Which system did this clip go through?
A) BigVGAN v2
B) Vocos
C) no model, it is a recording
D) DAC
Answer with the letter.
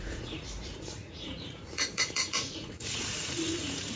B